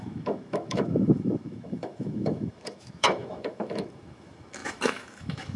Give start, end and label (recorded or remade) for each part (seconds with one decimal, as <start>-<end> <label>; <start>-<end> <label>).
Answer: 0.0-5.6 remade